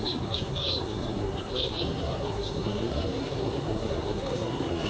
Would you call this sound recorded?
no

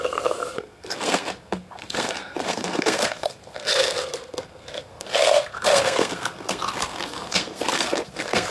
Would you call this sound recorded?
no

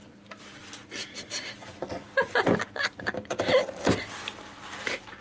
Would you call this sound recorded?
yes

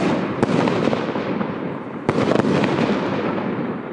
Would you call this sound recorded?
yes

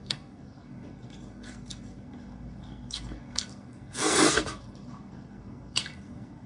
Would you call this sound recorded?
no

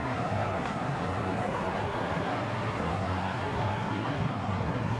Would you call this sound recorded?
no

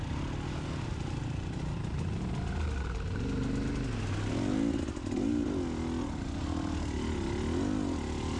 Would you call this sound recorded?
yes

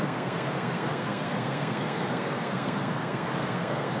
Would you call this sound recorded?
no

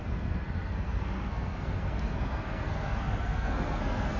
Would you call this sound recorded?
no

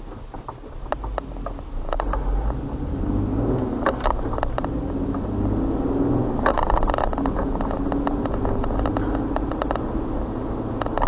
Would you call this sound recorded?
yes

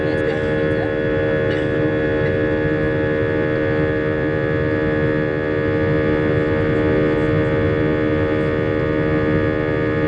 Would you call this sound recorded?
yes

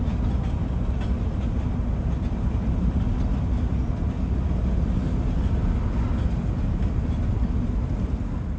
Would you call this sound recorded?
yes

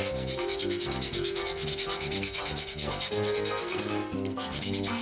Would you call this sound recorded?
no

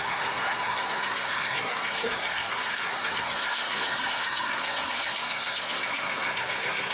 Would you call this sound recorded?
no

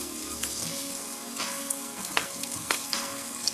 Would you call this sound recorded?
no